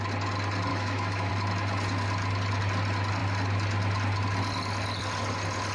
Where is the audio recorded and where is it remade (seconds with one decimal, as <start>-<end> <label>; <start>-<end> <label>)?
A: 0.0-0.7 recorded; 0.7-1.3 remade; 1.3-5.7 recorded